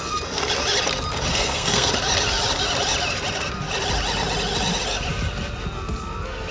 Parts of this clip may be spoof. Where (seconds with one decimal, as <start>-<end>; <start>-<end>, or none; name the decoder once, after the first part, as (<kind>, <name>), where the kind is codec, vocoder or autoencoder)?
1.3-1.9 (codec, SNAC)